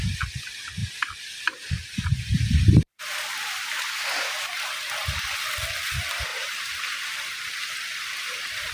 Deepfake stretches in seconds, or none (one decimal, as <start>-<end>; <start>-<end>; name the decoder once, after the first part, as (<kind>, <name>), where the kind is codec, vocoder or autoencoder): 0.8-3.0 (vocoder, BigVGAN v2); 6.3-7.5